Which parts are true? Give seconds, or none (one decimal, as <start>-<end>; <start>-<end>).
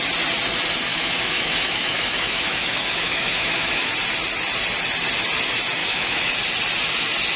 0.0-0.9; 3.9-5.8; 6.3-7.4